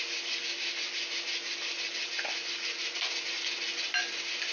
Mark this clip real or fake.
real